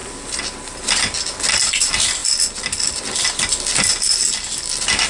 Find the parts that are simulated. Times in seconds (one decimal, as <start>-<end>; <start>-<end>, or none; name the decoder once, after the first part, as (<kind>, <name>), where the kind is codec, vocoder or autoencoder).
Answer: none